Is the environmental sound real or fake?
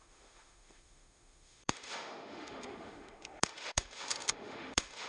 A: fake